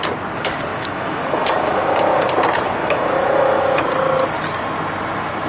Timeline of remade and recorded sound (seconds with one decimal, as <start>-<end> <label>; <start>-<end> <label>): 0.0-0.7 recorded; 0.7-1.8 remade; 1.8-2.8 recorded; 2.8-3.8 remade; 3.8-5.5 recorded